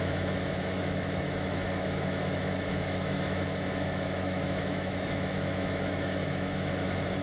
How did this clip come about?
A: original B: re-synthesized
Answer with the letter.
B